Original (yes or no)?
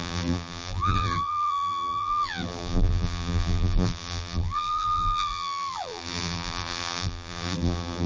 no